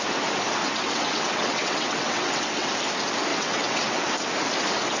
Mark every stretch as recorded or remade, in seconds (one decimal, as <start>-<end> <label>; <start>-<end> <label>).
0.0-0.6 recorded; 0.6-2.7 remade; 2.7-3.3 recorded; 3.3-4.1 remade; 4.1-5.0 recorded